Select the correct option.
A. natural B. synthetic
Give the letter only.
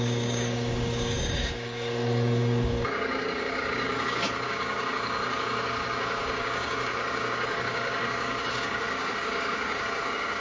B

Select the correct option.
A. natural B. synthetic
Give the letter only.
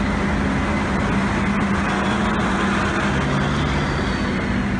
A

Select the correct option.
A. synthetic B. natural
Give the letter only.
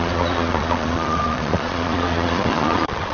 A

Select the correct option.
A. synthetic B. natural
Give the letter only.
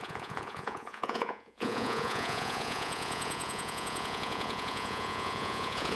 A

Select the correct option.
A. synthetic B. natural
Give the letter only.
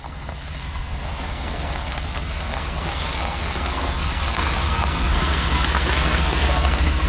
A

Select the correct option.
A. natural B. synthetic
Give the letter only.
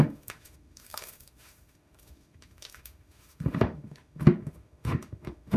B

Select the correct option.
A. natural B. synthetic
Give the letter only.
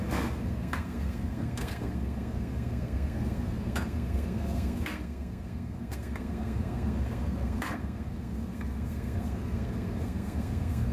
B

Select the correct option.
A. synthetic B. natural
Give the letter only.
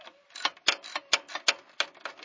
B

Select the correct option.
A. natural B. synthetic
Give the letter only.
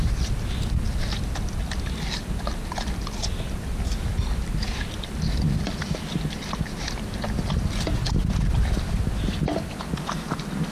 A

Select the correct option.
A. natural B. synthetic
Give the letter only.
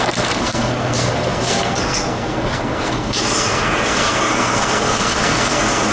B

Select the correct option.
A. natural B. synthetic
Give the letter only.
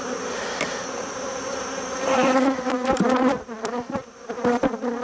B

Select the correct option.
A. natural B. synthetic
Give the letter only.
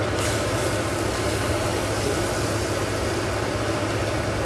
A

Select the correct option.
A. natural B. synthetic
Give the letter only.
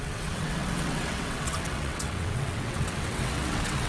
B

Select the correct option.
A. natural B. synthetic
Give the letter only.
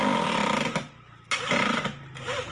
A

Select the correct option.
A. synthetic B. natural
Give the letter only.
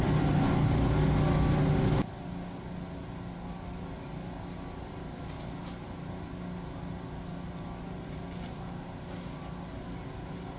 B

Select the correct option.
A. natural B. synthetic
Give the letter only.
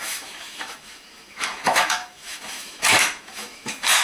B